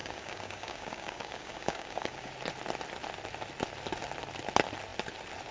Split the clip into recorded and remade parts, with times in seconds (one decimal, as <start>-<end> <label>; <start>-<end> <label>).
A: 0.0-2.3 remade; 2.3-5.5 recorded